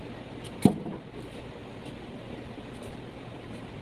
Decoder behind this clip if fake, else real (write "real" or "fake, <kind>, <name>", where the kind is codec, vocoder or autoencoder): real